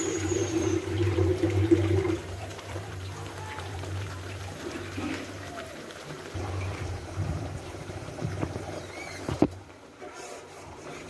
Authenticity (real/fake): fake